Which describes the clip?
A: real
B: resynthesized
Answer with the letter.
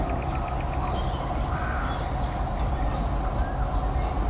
A